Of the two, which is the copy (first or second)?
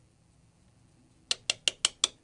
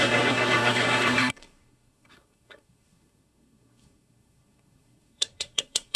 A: second